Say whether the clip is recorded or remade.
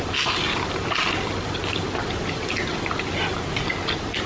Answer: recorded